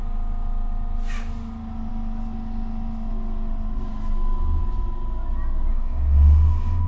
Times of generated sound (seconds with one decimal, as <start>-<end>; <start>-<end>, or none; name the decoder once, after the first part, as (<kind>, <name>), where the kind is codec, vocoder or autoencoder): 5.7-6.9 (autoencoder, DAC-VAE)